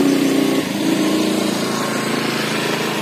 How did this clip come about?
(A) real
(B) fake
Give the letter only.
A